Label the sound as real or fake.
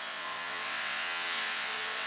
fake